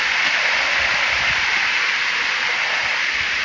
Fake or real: real